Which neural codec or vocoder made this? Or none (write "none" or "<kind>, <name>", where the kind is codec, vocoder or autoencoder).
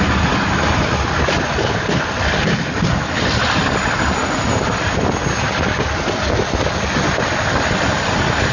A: none